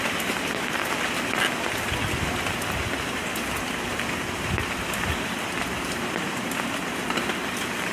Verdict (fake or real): real